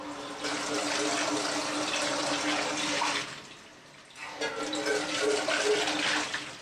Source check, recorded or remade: recorded